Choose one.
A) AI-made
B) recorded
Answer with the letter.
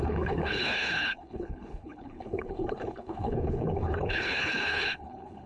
A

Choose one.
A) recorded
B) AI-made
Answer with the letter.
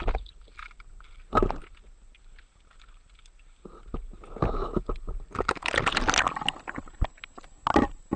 A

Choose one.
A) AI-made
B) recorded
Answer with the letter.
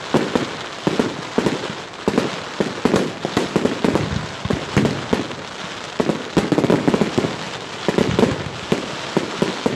B